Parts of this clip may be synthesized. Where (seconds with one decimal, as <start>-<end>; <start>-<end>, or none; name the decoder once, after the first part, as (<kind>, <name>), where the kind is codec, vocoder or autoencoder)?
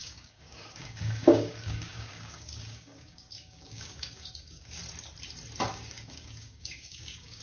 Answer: 0.0-4.8 (codec, DAC); 5.7-7.4